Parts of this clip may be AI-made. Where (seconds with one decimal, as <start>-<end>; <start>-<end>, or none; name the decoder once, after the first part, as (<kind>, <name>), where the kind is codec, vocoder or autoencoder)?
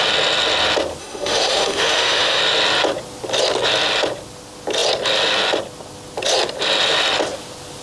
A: 1.0-2.4 (autoencoder, DAC-VAE)